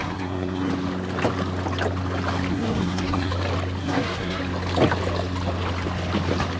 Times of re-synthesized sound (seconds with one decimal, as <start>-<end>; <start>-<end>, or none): 0.0-0.7; 2.5-3.3; 3.8-4.4